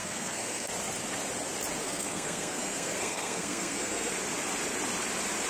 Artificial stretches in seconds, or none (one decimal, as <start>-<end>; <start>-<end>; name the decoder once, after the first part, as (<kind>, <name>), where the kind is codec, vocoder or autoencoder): 0.0-0.7 (codec, SNAC); 1.8-4.1